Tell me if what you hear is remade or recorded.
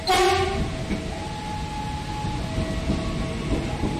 recorded